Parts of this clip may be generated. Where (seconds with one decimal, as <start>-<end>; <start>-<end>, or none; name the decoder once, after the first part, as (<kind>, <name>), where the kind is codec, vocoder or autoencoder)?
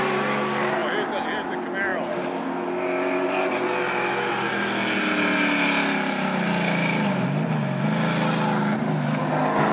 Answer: none